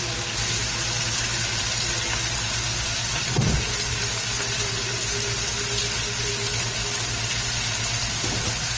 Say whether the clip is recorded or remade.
recorded